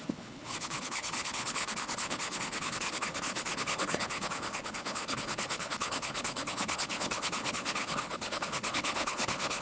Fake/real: fake